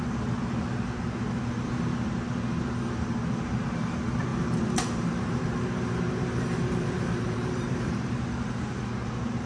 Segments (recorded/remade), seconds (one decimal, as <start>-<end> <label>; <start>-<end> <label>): 0.0-4.3 recorded; 4.3-8.1 remade; 8.1-9.5 recorded